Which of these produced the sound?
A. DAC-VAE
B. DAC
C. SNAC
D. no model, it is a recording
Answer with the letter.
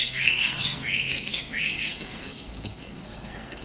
C